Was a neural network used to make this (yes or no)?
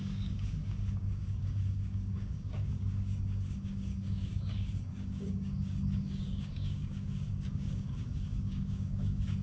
yes